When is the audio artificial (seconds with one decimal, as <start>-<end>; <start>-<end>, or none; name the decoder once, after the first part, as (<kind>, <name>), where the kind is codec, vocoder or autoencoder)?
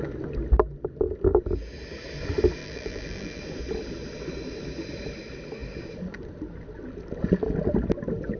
2.6-3.4 (vocoder, BigVGAN v2)